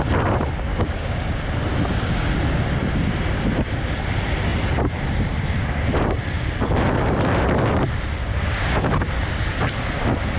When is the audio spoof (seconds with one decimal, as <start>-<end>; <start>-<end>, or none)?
0.7-1.3; 8.3-9.1